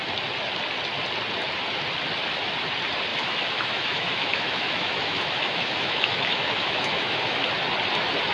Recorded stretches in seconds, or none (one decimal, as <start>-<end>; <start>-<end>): 0.0-3.1; 7.5-8.3